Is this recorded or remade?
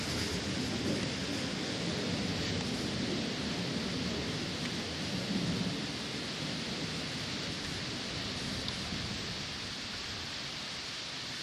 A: recorded